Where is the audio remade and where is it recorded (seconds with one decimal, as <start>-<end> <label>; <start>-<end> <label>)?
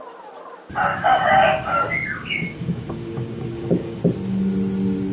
0.0-0.9 recorded; 0.9-4.0 remade; 4.0-5.1 recorded